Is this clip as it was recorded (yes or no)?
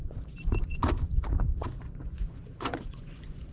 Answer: no